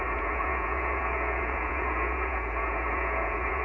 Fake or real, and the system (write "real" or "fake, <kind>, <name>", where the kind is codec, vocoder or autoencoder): fake, vocoder, Vocos